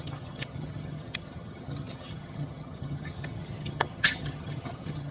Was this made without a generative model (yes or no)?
no